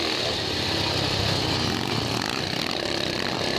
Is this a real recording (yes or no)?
yes